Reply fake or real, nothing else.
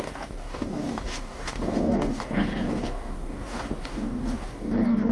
fake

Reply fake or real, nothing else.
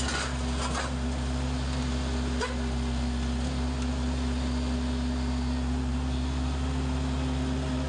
real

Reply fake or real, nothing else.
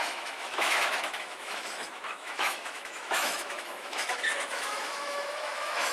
fake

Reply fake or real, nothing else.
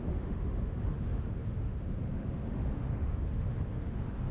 fake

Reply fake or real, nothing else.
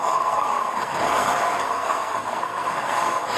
fake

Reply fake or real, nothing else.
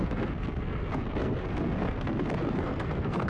fake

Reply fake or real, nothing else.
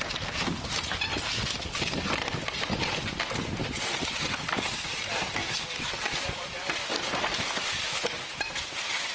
real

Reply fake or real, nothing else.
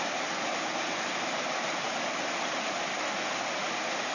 real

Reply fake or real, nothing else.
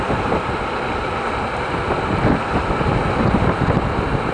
real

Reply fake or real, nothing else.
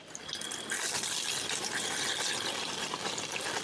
real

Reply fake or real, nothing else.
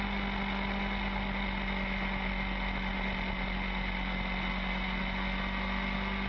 real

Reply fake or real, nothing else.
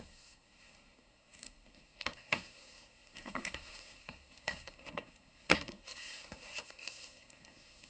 fake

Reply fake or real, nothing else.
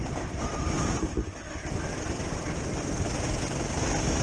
real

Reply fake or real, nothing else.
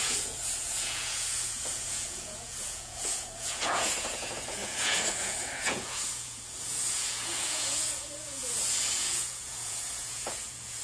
fake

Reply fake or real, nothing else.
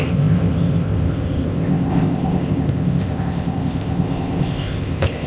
fake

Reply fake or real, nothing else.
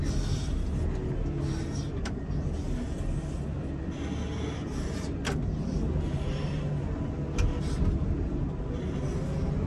real